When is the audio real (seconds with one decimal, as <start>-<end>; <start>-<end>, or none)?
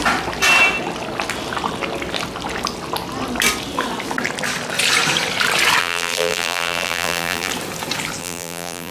0.0-5.8; 7.5-8.2